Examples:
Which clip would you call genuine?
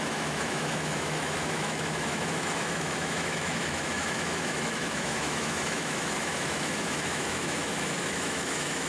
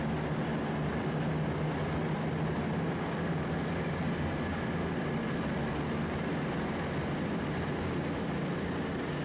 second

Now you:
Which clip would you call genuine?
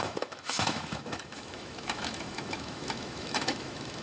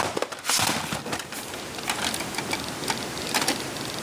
second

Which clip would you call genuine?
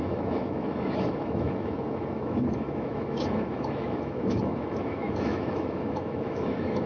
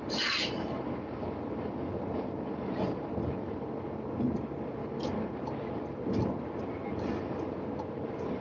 second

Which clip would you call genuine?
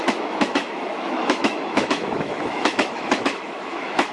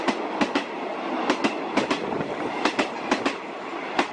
second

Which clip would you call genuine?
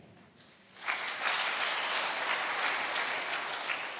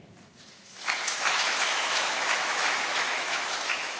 first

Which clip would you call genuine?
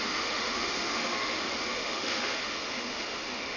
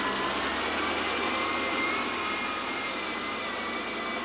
second